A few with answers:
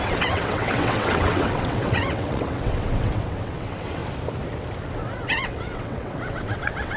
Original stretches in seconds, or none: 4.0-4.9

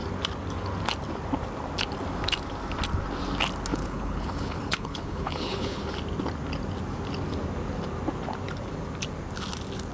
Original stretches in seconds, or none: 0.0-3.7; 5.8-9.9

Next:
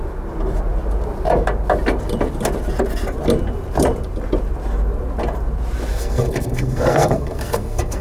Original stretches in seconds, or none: 0.0-5.9